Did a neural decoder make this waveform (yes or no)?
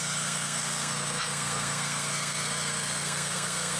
yes